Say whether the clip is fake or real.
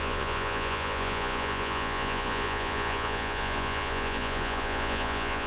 fake